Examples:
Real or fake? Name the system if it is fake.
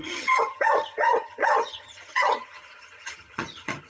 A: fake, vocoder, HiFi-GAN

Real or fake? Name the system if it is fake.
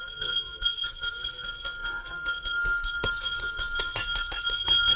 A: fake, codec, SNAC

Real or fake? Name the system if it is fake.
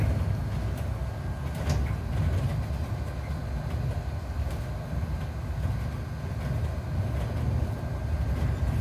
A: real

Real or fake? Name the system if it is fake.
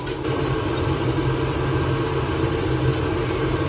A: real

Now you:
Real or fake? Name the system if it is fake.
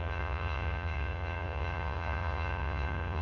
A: fake, vocoder, Vocos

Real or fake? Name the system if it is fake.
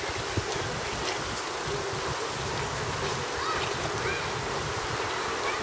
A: real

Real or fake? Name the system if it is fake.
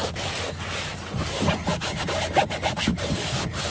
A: real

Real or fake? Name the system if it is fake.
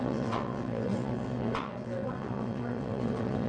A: fake, vocoder, WaveNeXt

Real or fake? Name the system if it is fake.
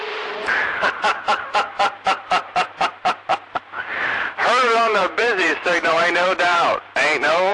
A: fake, vocoder, BigVGAN v2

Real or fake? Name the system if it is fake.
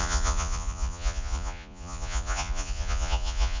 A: fake, vocoder, Vocos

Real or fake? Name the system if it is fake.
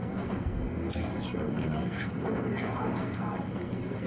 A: fake, codec, SNAC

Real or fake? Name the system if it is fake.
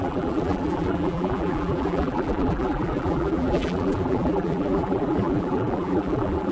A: fake, vocoder, BigVGAN v2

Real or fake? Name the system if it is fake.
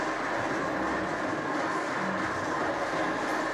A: real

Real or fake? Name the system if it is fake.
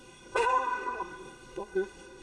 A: fake, codec, SNAC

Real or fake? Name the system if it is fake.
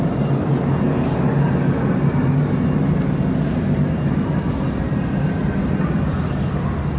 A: real